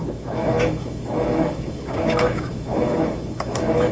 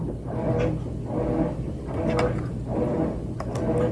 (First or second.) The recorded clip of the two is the second